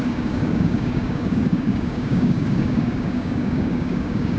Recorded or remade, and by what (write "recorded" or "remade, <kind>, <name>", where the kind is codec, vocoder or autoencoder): remade, codec, DAC